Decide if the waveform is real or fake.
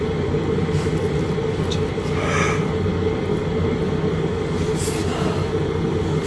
real